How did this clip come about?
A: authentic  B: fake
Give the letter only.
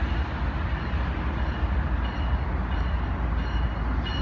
A